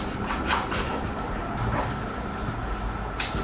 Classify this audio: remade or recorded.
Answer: recorded